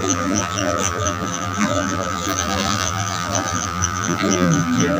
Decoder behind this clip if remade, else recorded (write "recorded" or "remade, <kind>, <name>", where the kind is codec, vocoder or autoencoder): remade, vocoder, BigVGAN v2